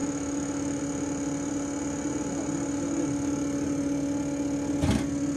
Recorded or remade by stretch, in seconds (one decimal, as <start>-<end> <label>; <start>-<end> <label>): 0.0-0.8 remade; 0.8-5.4 recorded